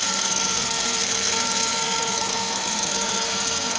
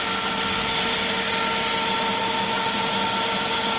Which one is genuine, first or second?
second